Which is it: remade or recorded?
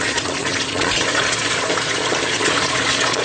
remade